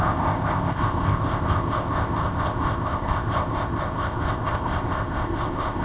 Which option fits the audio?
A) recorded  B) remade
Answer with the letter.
B